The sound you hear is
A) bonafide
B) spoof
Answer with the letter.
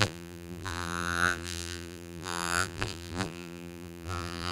B